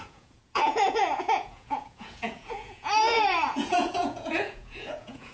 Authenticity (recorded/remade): remade